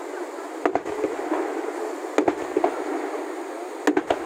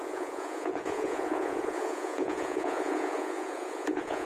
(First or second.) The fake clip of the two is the second